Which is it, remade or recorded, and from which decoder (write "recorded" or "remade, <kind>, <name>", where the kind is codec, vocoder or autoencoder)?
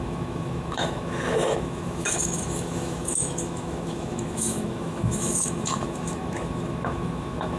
remade, autoencoder, DAC-VAE